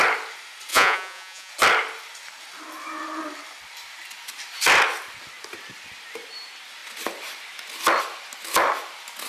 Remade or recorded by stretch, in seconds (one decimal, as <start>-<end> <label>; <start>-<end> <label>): 0.0-0.7 recorded; 0.7-1.5 remade; 1.5-9.3 recorded